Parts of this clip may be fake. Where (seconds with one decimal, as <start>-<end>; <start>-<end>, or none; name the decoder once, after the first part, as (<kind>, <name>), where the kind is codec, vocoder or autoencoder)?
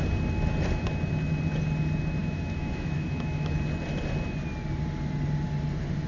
2.2-3.6 (autoencoder, DAC-VAE)